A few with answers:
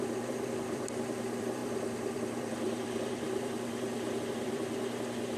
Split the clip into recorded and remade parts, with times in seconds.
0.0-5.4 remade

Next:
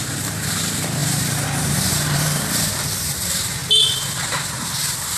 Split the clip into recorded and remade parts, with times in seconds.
0.0-3.6 remade; 3.6-4.2 recorded; 4.2-5.2 remade

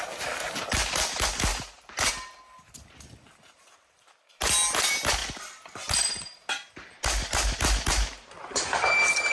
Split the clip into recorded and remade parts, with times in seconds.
0.0-1.5 recorded; 1.5-2.1 remade; 2.1-9.3 recorded